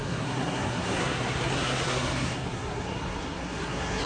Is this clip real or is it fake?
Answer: fake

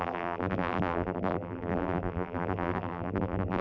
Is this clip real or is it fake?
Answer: fake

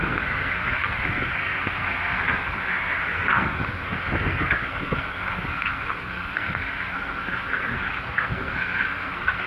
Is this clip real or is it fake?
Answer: fake